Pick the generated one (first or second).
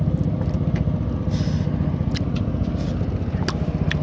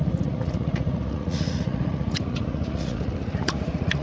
second